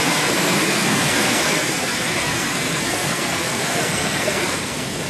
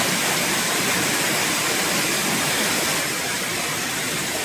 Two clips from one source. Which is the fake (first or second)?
first